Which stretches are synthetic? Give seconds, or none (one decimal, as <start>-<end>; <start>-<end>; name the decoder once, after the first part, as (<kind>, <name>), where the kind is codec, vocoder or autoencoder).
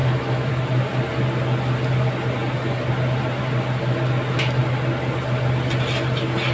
0.0-0.5 (autoencoder, DAC-VAE)